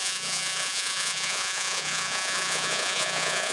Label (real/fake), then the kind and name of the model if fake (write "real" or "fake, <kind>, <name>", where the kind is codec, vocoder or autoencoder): fake, vocoder, Vocos